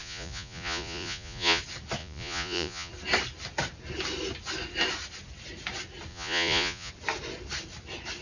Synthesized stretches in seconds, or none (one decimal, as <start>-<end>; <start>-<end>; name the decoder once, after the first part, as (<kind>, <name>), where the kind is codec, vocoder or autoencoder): 0.0-1.6 (vocoder, Vocos); 2.0-2.9; 6.1-6.9